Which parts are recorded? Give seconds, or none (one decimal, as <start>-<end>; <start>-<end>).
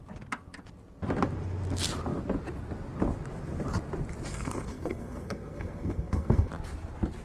0.0-4.3; 6.5-7.2